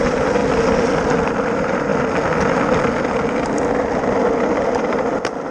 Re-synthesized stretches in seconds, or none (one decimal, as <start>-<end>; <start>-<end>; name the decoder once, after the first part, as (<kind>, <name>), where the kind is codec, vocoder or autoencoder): 0.0-0.4 (vocoder, BigVGAN v2); 1.5-1.9